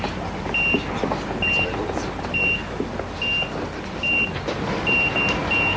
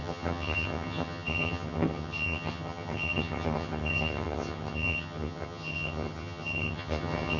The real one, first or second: first